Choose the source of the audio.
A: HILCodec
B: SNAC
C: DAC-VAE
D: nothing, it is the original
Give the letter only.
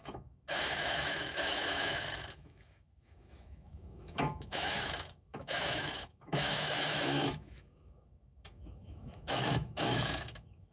C